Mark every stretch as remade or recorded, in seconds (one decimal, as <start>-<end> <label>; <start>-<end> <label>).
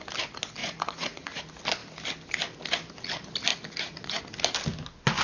0.0-0.6 recorded; 0.6-1.4 remade; 1.4-3.5 recorded; 3.5-4.2 remade; 4.2-5.2 recorded